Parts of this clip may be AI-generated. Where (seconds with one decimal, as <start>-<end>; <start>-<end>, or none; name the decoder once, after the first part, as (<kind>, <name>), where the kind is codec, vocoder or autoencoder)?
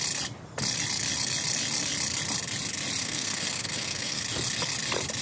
3.0-4.2 (codec, SNAC)